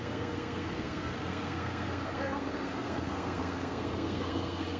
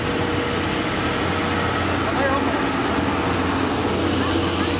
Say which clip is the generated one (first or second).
first